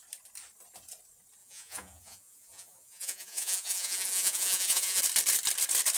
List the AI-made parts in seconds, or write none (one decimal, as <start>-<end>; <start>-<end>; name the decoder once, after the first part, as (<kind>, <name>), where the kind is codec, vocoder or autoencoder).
1.4-5.0 (vocoder, Vocos)